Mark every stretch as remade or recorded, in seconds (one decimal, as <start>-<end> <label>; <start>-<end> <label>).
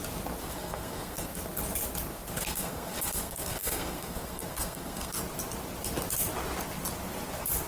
0.0-0.4 recorded; 0.4-1.4 remade; 1.4-2.1 recorded; 2.1-5.2 remade; 5.2-7.7 recorded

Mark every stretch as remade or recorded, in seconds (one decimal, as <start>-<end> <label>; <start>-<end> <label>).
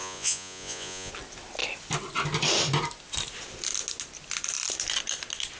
0.0-1.1 remade; 1.1-5.6 recorded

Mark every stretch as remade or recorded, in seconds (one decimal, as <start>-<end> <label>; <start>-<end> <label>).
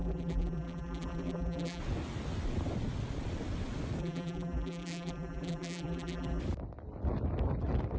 0.0-1.8 remade; 1.8-4.0 recorded; 4.0-6.4 remade; 6.4-8.0 recorded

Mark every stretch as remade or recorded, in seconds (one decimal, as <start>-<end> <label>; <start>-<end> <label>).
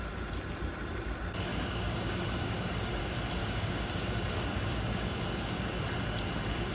0.0-1.5 recorded; 1.5-3.0 remade; 3.0-3.4 recorded; 3.4-5.8 remade; 5.8-6.7 recorded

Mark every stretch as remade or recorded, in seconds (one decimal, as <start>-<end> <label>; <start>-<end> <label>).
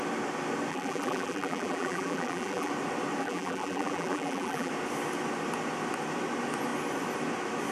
0.0-0.7 recorded; 0.7-2.7 remade; 2.7-3.2 recorded; 3.2-4.7 remade; 4.7-7.7 recorded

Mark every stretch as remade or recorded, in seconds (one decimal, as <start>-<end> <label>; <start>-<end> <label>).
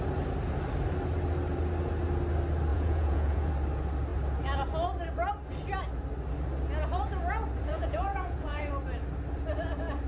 0.0-2.7 recorded; 2.7-3.5 remade; 3.5-7.7 recorded; 7.7-8.7 remade; 8.7-10.1 recorded